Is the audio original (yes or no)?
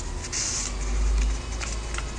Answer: yes